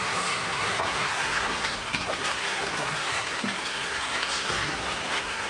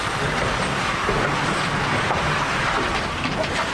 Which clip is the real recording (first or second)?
second